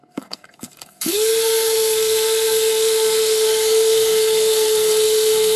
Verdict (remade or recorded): remade